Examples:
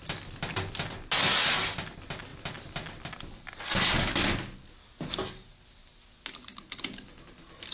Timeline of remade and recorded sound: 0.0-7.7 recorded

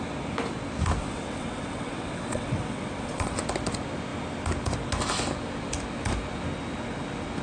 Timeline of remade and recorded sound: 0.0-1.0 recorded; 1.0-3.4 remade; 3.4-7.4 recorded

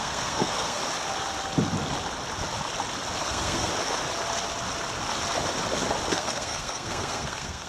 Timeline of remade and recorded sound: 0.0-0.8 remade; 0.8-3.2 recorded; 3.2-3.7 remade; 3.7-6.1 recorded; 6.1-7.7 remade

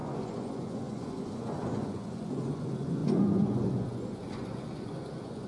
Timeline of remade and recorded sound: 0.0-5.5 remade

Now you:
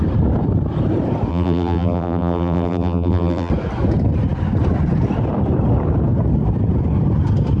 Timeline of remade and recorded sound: 0.0-1.3 recorded; 1.3-3.5 remade; 3.5-7.6 recorded

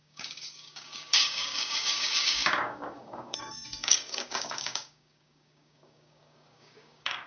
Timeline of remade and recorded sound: 0.0-7.3 remade